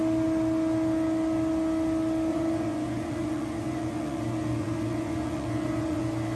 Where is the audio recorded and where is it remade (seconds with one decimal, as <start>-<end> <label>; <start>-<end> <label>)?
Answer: 0.0-2.3 recorded; 2.3-6.0 remade; 6.0-6.4 recorded